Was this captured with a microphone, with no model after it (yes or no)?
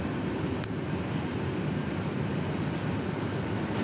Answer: yes